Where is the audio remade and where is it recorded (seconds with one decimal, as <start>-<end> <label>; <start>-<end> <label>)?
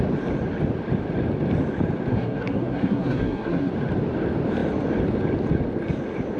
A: 0.0-2.1 recorded; 2.1-3.7 remade; 3.7-6.4 recorded